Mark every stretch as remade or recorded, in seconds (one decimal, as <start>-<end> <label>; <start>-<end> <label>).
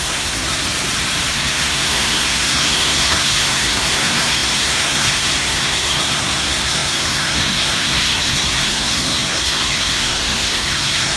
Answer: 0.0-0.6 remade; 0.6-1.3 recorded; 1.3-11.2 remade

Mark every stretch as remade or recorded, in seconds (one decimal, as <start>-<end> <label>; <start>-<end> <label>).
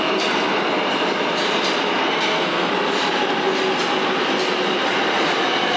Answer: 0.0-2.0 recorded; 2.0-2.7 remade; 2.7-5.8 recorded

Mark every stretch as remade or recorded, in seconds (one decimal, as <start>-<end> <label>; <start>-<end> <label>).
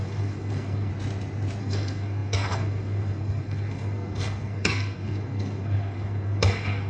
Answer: 0.0-0.9 remade; 0.9-1.6 recorded; 1.6-6.9 remade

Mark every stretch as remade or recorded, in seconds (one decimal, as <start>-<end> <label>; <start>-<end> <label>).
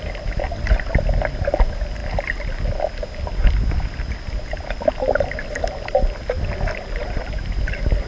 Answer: 0.0-8.1 recorded